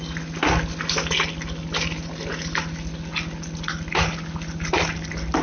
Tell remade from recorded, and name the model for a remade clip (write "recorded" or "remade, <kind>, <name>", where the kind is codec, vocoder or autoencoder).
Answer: recorded